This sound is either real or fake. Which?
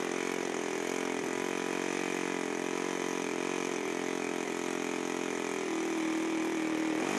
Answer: real